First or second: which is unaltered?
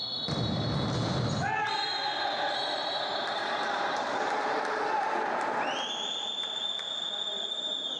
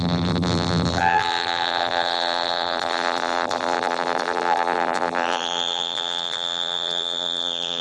first